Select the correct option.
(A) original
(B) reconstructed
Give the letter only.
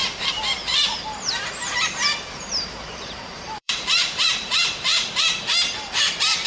B